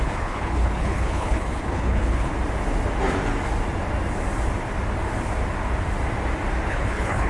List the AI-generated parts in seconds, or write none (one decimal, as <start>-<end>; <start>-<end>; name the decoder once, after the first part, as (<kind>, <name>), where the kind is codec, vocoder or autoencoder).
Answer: 0.0-2.3 (codec, HILCodec); 6.7-7.3